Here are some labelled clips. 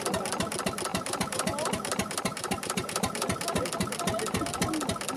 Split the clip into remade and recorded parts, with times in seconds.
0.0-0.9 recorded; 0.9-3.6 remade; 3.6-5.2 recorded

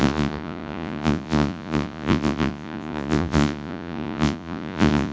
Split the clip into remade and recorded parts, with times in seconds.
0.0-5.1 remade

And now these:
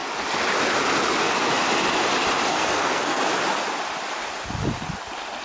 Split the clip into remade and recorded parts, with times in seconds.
0.0-2.5 recorded; 2.5-3.2 remade; 3.2-5.4 recorded

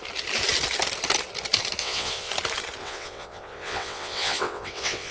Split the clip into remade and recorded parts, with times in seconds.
0.0-1.8 recorded; 1.8-2.3 remade; 2.3-2.8 recorded; 2.8-5.1 remade

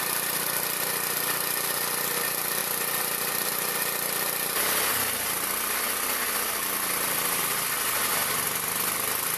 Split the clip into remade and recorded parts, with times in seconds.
0.0-9.4 recorded